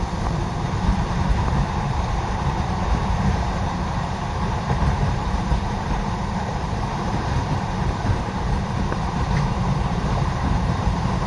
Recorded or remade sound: remade